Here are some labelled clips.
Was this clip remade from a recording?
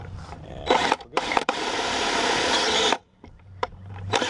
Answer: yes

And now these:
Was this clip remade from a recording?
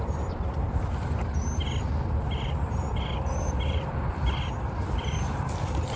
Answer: yes